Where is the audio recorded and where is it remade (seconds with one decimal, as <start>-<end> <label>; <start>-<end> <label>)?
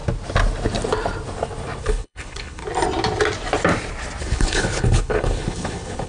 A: 0.0-1.8 recorded; 1.8-2.6 remade; 2.6-4.2 recorded; 4.2-6.1 remade